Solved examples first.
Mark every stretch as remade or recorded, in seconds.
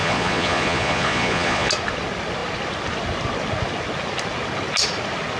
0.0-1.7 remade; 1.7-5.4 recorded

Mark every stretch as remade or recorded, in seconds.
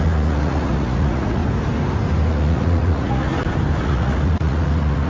0.0-1.4 remade; 1.4-2.3 recorded; 2.3-3.3 remade; 3.3-3.8 recorded; 3.8-5.1 remade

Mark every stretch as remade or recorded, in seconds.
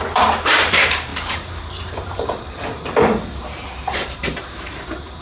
0.0-5.2 remade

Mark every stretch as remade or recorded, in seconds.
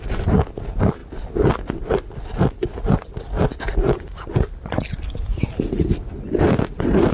0.0-7.1 recorded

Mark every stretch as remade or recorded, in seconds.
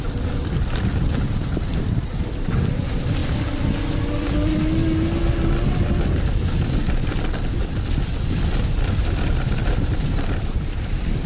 0.0-11.3 recorded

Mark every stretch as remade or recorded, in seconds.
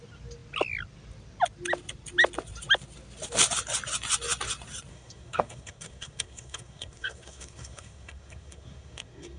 0.0-4.9 recorded; 4.9-9.4 remade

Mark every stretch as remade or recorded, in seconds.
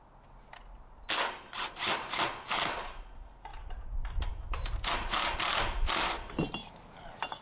0.0-7.4 recorded